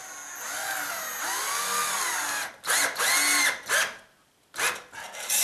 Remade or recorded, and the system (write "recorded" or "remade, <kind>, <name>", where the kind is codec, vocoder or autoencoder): recorded